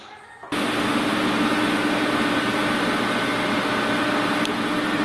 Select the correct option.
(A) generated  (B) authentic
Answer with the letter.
B